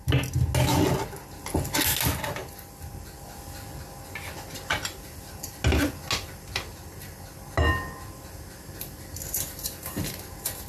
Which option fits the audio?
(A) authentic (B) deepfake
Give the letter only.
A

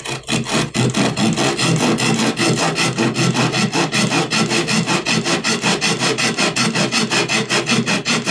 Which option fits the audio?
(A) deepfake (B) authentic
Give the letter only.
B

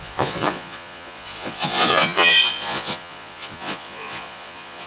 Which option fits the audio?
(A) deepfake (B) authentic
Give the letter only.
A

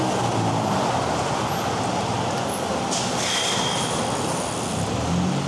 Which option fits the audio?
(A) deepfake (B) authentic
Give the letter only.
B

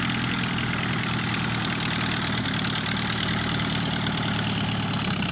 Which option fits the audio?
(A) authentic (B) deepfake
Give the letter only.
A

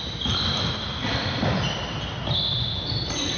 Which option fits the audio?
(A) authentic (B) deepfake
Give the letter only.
A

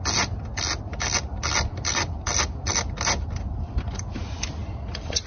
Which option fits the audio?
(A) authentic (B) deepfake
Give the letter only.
A